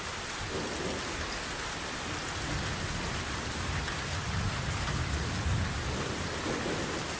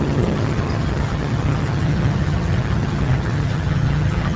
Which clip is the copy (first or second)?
second